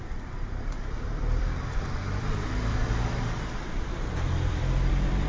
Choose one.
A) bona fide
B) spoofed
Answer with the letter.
B